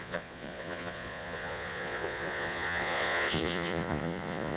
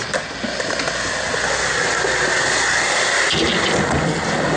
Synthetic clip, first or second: first